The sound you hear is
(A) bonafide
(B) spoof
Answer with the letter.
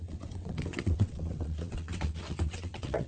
B